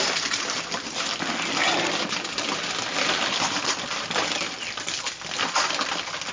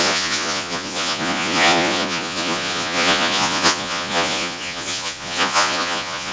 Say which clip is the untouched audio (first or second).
first